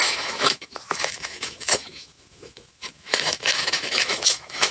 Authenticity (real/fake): fake